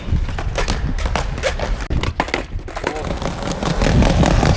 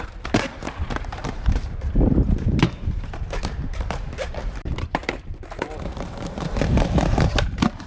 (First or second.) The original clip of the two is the first